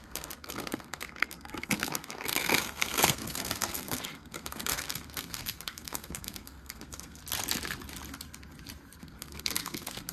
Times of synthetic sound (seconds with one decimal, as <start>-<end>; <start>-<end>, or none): 0.0-7.2; 9.0-10.1